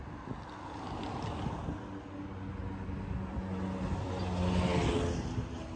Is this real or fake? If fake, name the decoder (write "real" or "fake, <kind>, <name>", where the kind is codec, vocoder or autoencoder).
real